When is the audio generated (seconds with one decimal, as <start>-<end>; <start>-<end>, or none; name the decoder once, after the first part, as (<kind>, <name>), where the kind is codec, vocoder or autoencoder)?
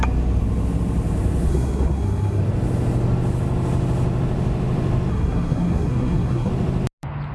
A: 1.5-2.4 (codec, SNAC); 5.1-6.5